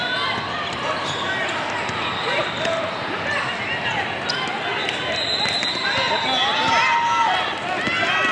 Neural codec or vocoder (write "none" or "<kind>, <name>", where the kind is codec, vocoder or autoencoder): none